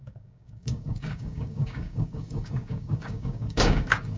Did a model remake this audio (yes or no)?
yes